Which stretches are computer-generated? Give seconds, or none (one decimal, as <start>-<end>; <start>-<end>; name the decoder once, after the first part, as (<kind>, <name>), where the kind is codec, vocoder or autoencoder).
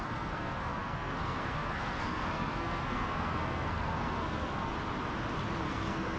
0.0-4.7 (codec, SNAC); 5.6-6.2